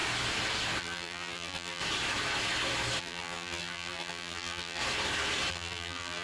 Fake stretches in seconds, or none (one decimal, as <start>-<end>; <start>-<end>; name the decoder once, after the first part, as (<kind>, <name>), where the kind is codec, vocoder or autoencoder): 0.8-1.8 (vocoder, BigVGAN v2); 3.0-4.8; 5.5-6.2